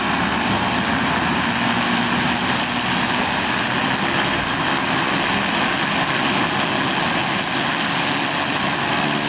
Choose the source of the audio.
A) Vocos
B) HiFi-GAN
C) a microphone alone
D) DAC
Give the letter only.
C